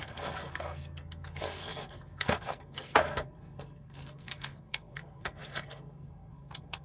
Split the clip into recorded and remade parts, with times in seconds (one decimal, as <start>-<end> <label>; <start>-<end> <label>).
0.0-6.8 remade

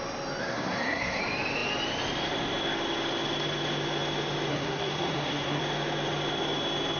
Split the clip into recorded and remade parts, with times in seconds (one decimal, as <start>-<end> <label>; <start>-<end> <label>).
0.0-0.4 recorded; 0.4-1.2 remade; 1.2-4.5 recorded; 4.5-5.6 remade; 5.6-7.0 recorded

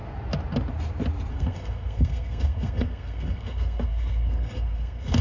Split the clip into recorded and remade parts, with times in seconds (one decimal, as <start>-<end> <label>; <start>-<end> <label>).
0.0-1.3 recorded; 1.3-5.2 remade

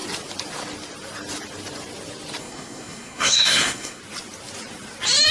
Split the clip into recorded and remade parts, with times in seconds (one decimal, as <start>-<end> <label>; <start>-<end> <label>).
0.0-2.4 recorded; 2.4-4.0 remade; 4.0-5.3 recorded

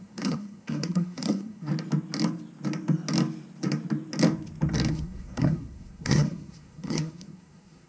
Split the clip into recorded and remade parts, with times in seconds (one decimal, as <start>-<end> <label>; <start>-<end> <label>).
0.0-1.7 remade; 1.7-4.9 recorded; 4.9-7.9 remade

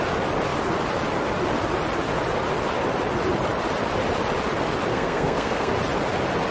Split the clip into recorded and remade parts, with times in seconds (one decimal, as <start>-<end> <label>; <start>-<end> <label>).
0.0-4.9 recorded; 4.9-5.7 remade; 5.7-6.5 recorded